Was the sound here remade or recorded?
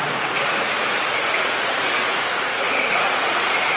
remade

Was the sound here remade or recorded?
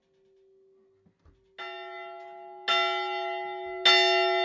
recorded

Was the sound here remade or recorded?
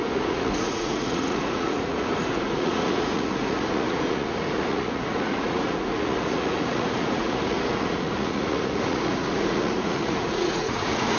remade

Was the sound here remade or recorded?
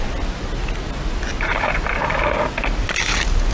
recorded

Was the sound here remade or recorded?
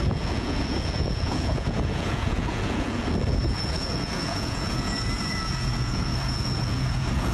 remade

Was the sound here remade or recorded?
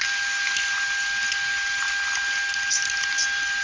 recorded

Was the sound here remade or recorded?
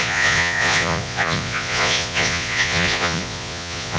remade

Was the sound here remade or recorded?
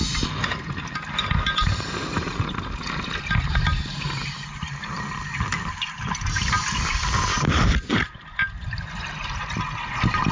recorded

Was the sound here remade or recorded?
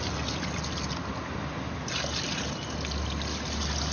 recorded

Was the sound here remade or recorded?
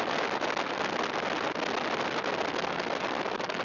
recorded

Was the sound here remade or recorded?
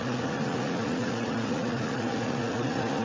remade